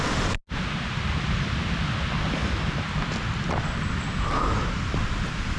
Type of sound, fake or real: real